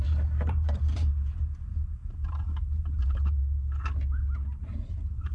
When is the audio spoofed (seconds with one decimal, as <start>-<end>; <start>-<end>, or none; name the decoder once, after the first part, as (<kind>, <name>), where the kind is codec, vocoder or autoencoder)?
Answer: 0.0-3.4 (vocoder, BigVGAN v2); 4.6-5.3